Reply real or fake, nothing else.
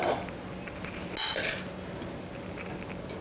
real